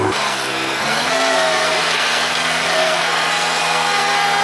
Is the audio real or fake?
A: fake